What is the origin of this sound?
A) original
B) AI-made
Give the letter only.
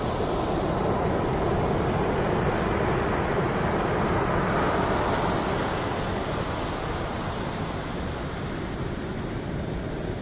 A